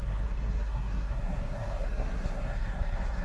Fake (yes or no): yes